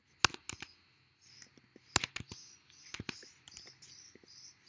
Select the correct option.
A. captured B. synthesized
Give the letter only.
A